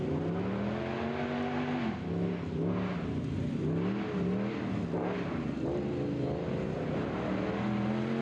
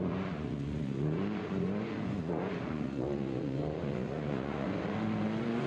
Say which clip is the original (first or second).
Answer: first